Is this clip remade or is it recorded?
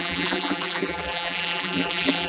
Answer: remade